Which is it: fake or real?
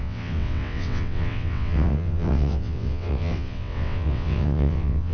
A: fake